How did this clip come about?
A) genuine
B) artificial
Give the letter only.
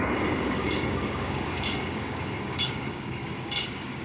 B